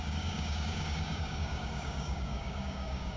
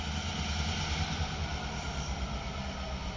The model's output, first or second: first